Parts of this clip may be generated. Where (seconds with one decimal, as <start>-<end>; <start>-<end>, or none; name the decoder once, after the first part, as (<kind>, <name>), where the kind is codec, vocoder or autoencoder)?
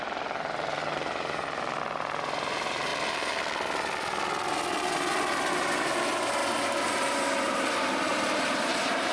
0.0-2.9 (vocoder, BigVGAN v2); 5.5-9.1